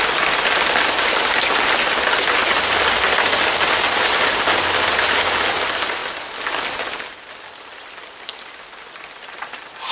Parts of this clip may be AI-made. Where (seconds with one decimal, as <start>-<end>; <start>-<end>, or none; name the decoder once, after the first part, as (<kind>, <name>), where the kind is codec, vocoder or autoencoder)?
none